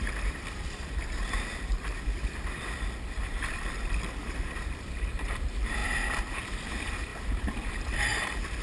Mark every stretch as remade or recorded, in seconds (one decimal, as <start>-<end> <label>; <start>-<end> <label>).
0.0-8.6 remade